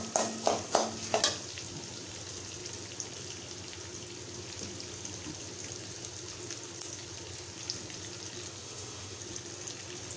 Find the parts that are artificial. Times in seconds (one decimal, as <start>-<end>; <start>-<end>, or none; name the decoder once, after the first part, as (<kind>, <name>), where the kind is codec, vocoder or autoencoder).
8.6-9.2 (autoencoder, DAC-VAE)